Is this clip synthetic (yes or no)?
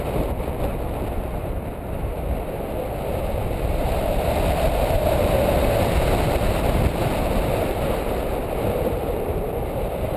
yes